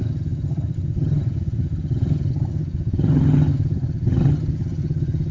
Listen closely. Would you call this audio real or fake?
fake